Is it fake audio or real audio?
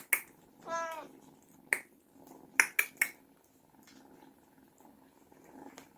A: real